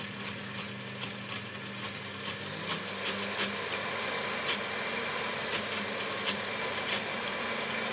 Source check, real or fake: real